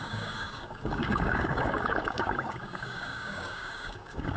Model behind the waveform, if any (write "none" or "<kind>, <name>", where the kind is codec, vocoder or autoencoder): codec, DAC